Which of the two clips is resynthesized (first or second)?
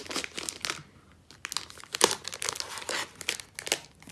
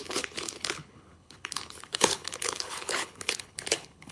second